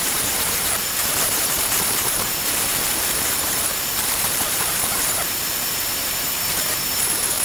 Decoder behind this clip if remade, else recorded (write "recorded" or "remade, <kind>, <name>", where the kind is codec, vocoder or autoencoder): remade, vocoder, BigVGAN v2